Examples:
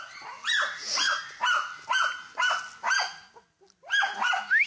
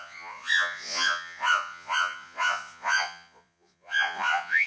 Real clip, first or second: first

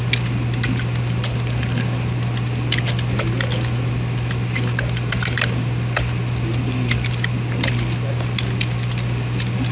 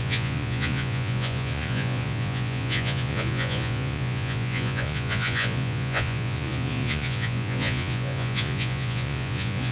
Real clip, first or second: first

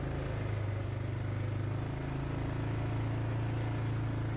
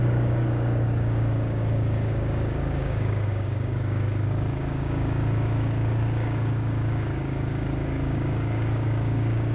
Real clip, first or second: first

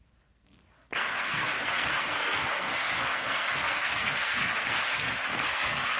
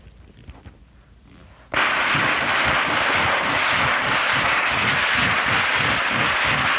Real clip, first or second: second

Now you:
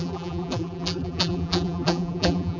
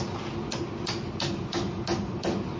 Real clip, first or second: second